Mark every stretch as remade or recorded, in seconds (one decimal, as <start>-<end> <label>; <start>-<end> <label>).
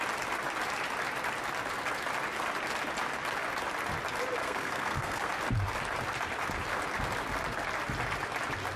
0.0-4.4 recorded; 4.4-5.3 remade; 5.3-8.8 recorded